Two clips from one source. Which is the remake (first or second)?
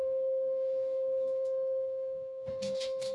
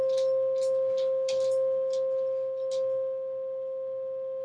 first